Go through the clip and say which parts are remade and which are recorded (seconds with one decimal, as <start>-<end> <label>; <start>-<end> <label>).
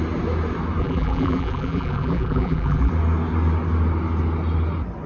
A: 0.0-0.8 recorded; 0.8-2.9 remade; 2.9-5.1 recorded